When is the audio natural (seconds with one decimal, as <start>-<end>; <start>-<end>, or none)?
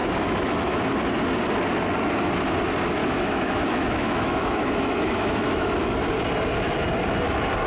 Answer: 0.8-3.0; 5.7-7.7